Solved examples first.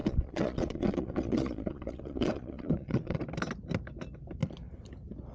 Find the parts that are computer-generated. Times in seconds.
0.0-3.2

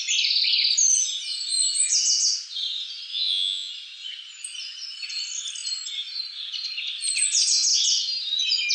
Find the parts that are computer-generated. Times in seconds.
3.1-3.7

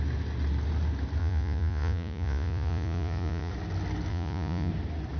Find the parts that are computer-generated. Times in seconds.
1.2-3.5; 4.1-4.7